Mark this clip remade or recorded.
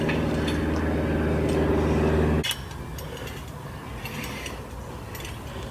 recorded